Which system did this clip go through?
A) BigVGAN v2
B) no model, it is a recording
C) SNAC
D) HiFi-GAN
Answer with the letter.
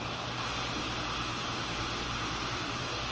A